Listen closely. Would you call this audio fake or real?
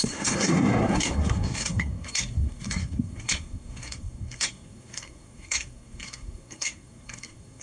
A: fake